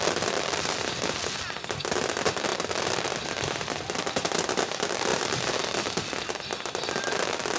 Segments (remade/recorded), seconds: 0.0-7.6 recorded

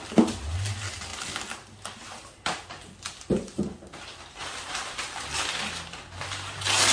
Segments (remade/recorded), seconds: 0.0-6.9 recorded

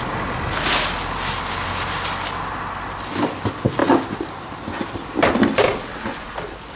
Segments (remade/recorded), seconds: 0.0-6.8 recorded

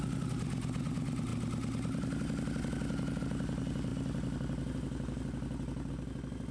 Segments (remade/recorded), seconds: 0.0-6.5 recorded